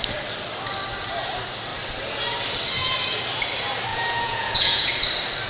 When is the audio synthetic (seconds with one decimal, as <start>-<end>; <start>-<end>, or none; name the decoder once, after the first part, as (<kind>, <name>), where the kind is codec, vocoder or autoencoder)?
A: 3.9-4.9 (vocoder, Vocos)